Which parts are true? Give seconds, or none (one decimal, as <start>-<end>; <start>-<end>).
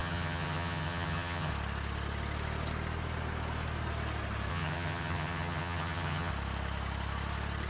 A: 1.5-4.5; 6.3-7.7